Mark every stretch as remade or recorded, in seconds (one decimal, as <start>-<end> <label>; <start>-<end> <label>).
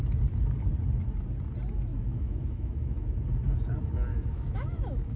0.0-1.9 recorded; 1.9-3.1 remade; 3.1-4.1 recorded; 4.1-5.2 remade